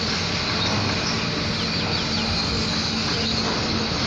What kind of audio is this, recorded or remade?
recorded